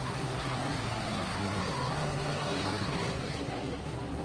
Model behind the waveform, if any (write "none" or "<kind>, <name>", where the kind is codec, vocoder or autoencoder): codec, SNAC